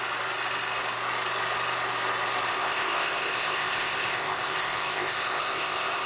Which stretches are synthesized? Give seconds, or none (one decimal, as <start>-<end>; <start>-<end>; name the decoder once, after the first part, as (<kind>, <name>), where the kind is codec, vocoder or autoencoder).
2.5-6.1 (codec, ZipCodec)